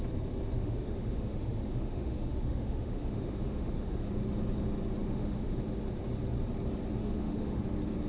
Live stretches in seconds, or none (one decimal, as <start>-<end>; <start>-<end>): 0.0-0.6; 4.1-5.0; 5.6-7.0; 7.6-8.1